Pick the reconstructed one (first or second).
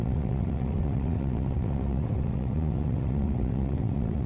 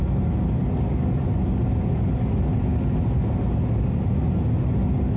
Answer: first